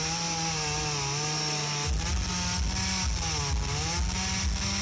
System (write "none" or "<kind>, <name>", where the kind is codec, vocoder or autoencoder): none